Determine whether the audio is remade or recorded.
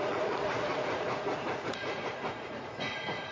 remade